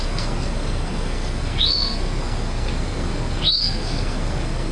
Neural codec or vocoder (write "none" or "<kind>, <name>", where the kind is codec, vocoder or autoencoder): codec, SNAC